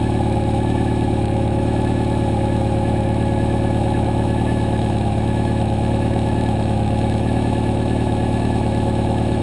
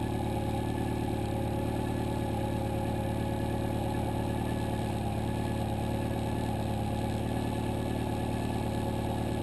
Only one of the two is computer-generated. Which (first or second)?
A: first